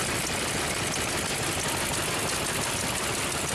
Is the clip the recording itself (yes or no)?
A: yes